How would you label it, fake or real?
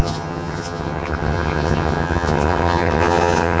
fake